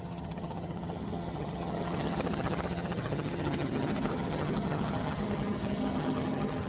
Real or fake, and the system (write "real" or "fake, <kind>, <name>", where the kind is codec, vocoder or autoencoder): fake, vocoder, HiFi-GAN